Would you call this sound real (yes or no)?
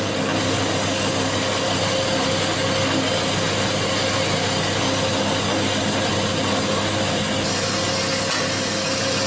yes